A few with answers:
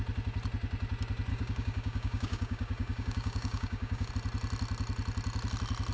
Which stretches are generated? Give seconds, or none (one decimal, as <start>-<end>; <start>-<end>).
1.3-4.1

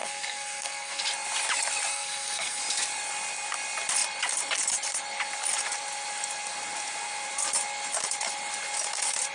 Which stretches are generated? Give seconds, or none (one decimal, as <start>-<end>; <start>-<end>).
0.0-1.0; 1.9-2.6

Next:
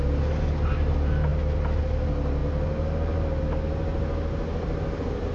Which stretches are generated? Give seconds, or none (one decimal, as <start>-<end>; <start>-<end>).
none

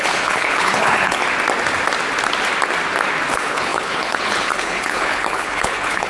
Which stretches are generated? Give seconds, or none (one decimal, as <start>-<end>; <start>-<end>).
0.0-1.2; 3.3-6.1

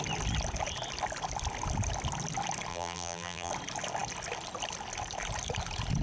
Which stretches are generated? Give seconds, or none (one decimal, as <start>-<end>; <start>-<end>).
2.7-3.5